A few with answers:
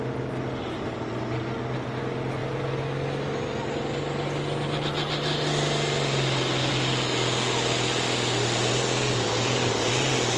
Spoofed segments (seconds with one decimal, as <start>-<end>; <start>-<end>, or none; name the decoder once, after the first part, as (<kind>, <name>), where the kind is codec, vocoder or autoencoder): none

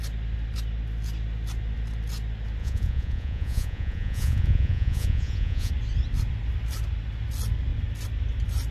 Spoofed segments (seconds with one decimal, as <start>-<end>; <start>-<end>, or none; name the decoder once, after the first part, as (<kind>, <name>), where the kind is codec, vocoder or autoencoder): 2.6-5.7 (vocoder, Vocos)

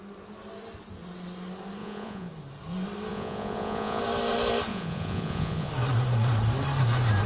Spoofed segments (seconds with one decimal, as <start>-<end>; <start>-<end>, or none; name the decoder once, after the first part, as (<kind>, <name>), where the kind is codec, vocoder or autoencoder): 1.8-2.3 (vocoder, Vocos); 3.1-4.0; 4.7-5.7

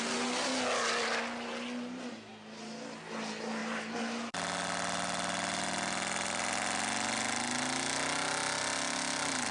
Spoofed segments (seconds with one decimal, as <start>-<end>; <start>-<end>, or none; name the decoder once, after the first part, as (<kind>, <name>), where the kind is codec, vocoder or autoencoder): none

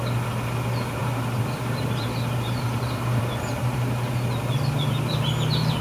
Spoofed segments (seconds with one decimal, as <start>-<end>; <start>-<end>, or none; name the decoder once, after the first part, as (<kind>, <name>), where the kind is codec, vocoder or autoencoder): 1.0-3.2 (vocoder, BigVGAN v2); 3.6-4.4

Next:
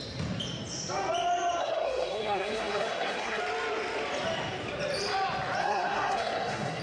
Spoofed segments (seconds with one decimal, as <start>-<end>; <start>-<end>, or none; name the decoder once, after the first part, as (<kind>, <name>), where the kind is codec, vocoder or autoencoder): 1.6-3.4 (codec, SNAC); 5.6-6.8

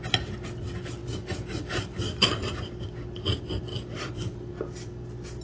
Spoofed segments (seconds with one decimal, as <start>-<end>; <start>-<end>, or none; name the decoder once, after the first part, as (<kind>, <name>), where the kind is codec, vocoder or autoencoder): 1.0-2.6 (vocoder, BigVGAN v2); 3.7-4.5